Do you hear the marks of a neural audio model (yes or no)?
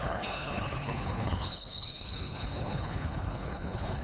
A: yes